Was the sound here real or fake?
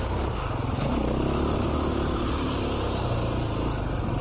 real